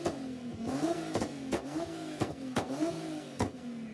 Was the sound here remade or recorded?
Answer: remade